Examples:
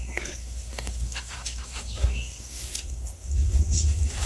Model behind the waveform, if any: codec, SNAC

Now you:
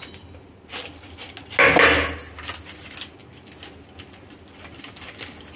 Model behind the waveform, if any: none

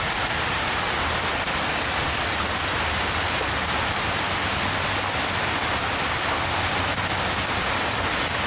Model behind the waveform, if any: none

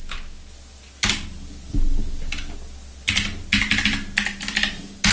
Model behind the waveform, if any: none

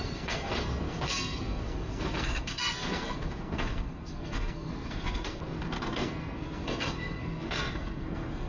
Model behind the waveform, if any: codec, SNAC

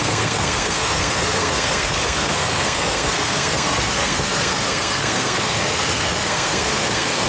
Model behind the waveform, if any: codec, SNAC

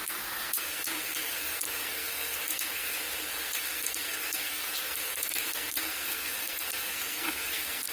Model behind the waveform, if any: codec, SNAC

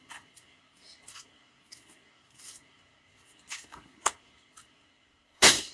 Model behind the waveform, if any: codec, SNAC